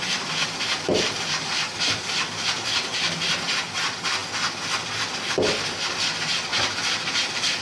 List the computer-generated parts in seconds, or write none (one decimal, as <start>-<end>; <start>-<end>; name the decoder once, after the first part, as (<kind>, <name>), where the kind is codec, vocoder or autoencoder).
0.7-3.3 (vocoder, BigVGAN v2); 6.5-7.6